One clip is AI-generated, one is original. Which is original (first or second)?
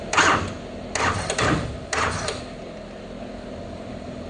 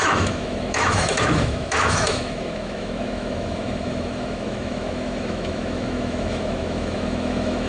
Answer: first